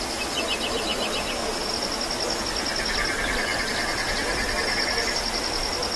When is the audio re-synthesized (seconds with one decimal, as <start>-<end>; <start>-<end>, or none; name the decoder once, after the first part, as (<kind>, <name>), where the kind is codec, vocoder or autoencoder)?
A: none